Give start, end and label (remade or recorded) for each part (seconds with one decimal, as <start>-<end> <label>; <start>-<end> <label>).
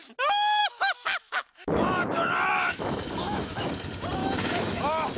0.0-0.6 recorded; 0.6-3.7 remade; 3.7-4.2 recorded; 4.2-4.8 remade; 4.8-5.2 recorded